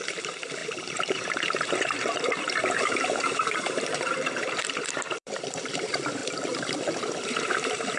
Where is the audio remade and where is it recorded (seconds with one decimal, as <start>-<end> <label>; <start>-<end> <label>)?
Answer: 0.0-6.2 remade; 6.2-7.3 recorded; 7.3-8.0 remade